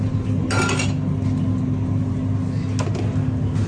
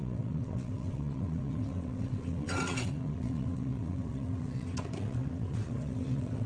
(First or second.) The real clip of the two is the first